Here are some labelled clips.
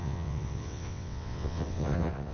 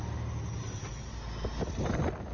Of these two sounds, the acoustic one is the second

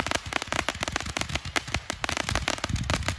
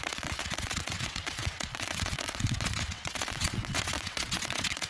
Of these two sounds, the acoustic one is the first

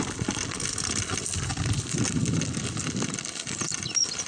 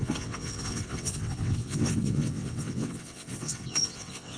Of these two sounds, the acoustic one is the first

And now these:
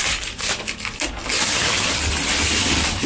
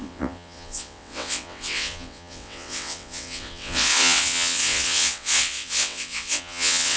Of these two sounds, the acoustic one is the first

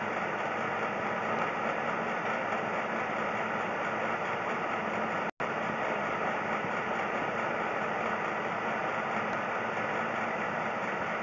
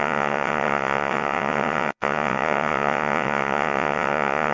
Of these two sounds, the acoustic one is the first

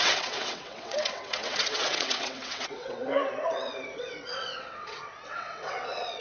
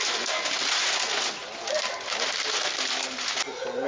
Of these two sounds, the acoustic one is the second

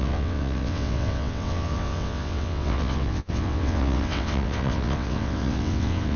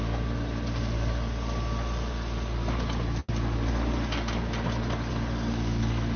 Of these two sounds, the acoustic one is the second